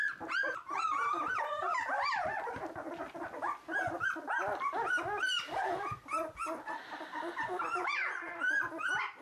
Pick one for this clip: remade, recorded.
recorded